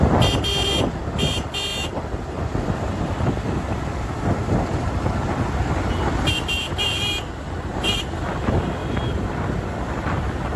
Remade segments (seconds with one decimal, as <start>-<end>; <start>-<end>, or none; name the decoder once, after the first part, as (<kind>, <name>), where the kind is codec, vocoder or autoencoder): 1.7-3.1 (vocoder, BigVGAN v2); 5.6-8.3